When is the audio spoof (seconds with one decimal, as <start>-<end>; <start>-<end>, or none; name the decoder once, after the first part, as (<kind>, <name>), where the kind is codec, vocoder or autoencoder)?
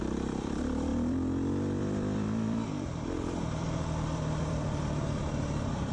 0.0-5.9 (vocoder, BigVGAN v2)